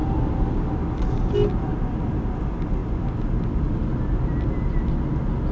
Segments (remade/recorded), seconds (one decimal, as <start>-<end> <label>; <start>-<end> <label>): 0.0-5.5 recorded

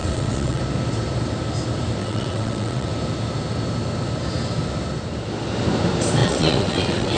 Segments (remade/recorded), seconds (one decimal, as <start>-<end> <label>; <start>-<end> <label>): 0.0-0.6 remade; 0.6-2.0 recorded; 2.0-2.9 remade; 2.9-6.2 recorded; 6.2-7.2 remade